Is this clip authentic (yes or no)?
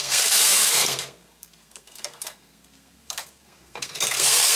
no